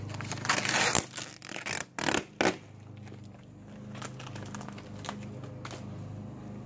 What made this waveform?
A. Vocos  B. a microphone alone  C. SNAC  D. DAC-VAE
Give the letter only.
B